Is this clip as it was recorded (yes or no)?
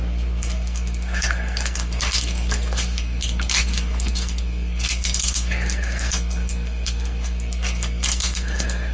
no